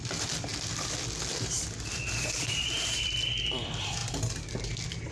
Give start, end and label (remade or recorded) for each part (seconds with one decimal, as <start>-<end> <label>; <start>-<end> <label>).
0.0-0.5 remade; 0.5-1.6 recorded; 1.6-4.0 remade; 4.0-5.1 recorded